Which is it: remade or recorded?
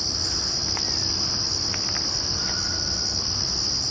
recorded